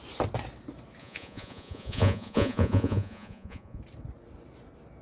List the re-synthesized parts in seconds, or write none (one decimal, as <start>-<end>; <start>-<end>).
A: 1.0-3.8